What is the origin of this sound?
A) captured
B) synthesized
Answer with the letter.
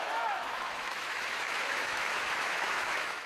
B